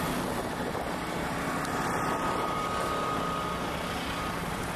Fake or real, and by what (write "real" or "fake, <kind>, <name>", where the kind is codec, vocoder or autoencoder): real